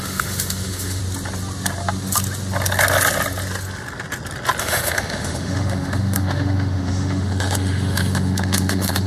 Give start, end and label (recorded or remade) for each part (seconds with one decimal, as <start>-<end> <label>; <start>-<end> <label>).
0.0-1.0 remade; 1.0-4.6 recorded; 4.6-9.1 remade